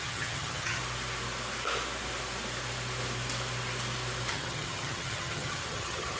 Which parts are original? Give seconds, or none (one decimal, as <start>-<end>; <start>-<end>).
0.8-4.3